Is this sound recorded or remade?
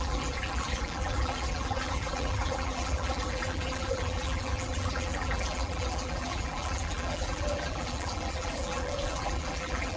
remade